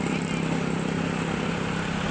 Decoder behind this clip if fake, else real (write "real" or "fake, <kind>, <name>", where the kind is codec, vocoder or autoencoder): real